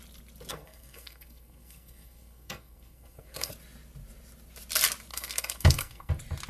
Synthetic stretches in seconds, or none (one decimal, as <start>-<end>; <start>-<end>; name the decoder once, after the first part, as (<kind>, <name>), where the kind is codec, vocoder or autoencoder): 0.5-3.5 (codec, SNAC); 5.1-6.1